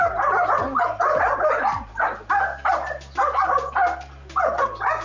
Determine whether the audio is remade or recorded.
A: recorded